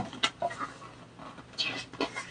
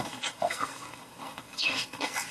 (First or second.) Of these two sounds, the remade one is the second